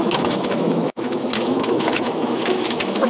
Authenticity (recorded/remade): remade